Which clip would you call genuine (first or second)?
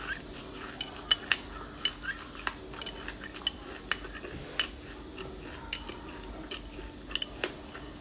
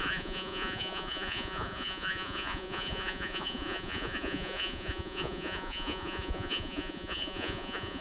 first